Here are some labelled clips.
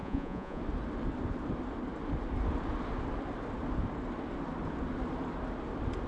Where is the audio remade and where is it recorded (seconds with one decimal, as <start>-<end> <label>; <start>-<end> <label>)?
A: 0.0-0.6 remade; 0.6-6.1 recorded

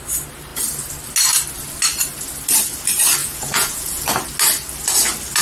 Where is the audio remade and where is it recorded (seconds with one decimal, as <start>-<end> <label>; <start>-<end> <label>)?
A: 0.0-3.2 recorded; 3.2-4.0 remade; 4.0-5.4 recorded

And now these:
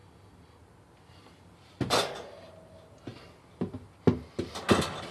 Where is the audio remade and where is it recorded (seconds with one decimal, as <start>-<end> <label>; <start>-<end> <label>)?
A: 0.0-5.1 recorded